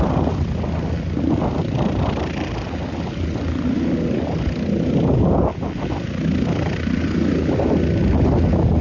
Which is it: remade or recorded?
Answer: recorded